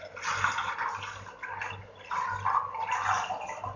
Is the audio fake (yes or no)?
no